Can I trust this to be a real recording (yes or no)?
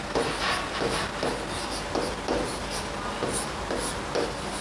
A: yes